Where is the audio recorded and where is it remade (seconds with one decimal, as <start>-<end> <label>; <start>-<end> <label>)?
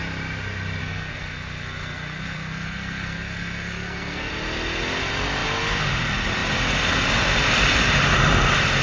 0.0-0.8 recorded; 0.8-4.3 remade; 4.3-8.8 recorded